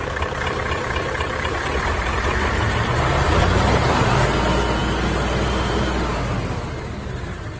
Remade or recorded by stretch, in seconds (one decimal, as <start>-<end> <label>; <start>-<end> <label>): 0.0-1.5 remade; 1.5-7.6 recorded